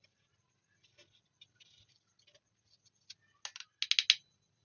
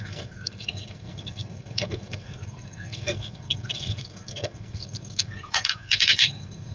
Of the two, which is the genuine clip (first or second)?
first